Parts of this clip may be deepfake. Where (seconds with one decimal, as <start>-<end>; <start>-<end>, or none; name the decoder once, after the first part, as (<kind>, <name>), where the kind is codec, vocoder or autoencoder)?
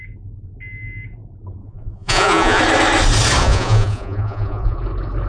1.6-2.6 (vocoder, Vocos); 3.4-4.8